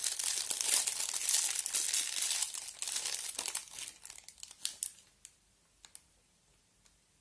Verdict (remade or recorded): recorded